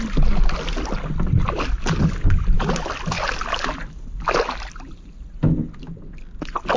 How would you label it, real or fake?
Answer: real